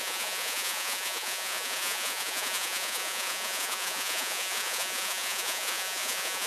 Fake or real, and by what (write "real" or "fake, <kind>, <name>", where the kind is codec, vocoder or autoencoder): fake, vocoder, Vocos